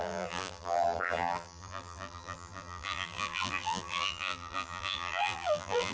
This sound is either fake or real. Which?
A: fake